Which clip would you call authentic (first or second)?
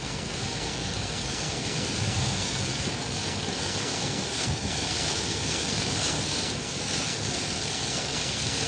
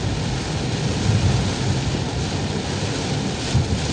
second